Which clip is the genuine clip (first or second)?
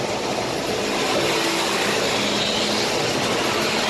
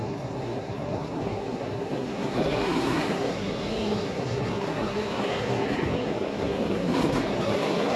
first